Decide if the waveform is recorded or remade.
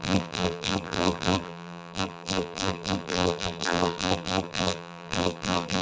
remade